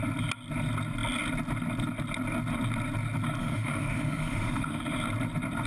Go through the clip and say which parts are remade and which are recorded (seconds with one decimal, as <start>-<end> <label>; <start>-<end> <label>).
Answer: 0.0-3.4 recorded; 3.4-4.8 remade; 4.8-5.7 recorded